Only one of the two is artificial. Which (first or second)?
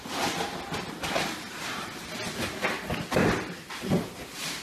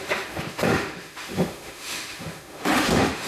second